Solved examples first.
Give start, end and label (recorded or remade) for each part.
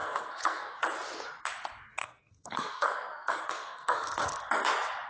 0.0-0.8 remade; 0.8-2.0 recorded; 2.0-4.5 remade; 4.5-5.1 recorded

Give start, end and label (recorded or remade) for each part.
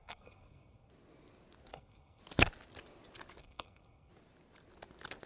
0.0-0.9 remade; 0.9-1.7 recorded; 1.7-2.2 remade; 2.2-3.4 recorded; 3.4-4.1 remade; 4.1-5.3 recorded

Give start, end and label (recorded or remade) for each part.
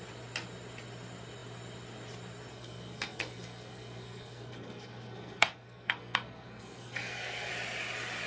0.0-2.5 recorded; 2.5-7.5 remade; 7.5-8.3 recorded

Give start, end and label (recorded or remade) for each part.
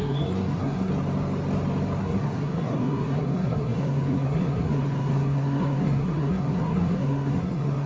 0.0-0.9 remade; 0.9-2.0 recorded; 2.0-7.9 remade